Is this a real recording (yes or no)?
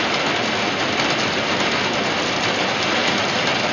yes